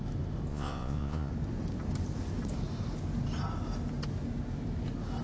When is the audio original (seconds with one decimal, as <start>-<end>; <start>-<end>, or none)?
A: 0.0-0.5; 1.3-5.2